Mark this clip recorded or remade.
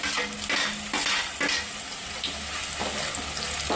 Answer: recorded